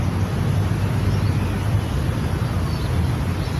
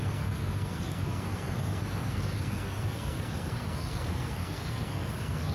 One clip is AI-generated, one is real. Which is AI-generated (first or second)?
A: second